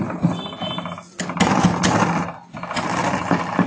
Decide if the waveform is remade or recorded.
recorded